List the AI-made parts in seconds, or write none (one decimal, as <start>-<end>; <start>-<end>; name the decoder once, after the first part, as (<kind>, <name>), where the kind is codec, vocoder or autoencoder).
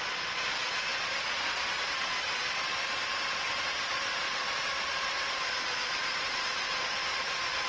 0.0-7.7 (vocoder, Vocos)